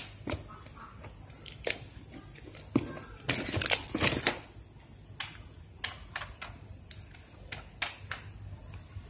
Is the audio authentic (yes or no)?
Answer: yes